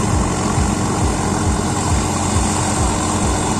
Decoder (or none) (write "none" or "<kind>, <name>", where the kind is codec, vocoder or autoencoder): none